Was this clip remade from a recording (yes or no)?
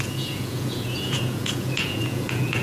yes